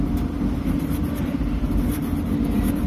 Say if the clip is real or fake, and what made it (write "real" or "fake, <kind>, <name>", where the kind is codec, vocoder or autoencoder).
fake, vocoder, BigVGAN v2